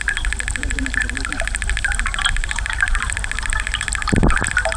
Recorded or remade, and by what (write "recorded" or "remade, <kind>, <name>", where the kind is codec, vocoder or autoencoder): recorded